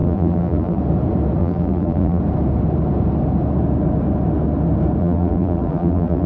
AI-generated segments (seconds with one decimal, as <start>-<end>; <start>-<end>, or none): 0.0-0.8; 1.4-2.2; 5.0-6.3